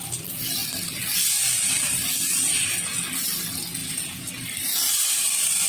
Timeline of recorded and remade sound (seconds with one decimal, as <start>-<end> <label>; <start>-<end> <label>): 0.0-2.3 recorded; 2.3-3.1 remade; 3.1-3.8 recorded; 3.8-4.3 remade; 4.3-5.7 recorded